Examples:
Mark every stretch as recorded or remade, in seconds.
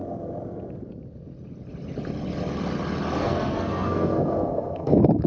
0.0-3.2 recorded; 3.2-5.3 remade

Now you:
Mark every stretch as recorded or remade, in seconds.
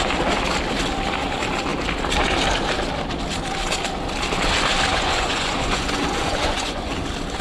0.0-4.9 recorded; 4.9-6.9 remade; 6.9-7.4 recorded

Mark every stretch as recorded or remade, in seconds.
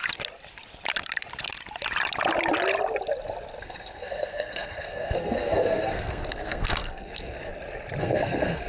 0.0-3.6 recorded; 3.6-7.5 remade; 7.5-8.0 recorded; 8.0-8.7 remade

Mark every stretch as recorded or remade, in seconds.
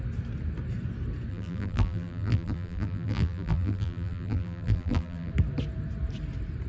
0.0-1.3 recorded; 1.3-5.3 remade; 5.3-6.7 recorded